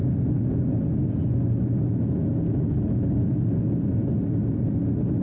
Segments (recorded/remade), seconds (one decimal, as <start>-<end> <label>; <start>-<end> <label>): 0.0-5.2 recorded